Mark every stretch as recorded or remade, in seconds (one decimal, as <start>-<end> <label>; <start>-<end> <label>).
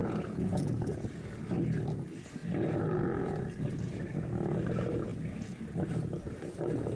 0.0-0.9 remade; 0.9-7.0 recorded